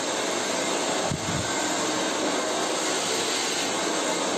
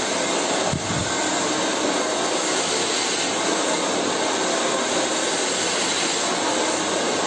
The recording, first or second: first